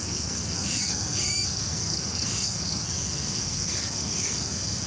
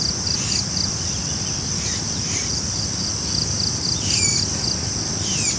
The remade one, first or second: first